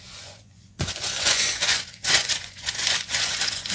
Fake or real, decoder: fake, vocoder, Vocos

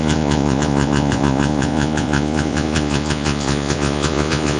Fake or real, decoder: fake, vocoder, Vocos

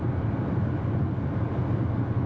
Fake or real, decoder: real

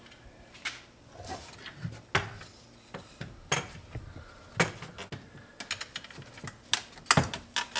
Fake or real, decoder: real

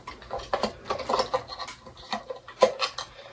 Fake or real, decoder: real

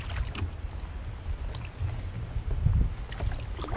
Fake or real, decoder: real